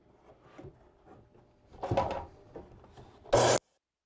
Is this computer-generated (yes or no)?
no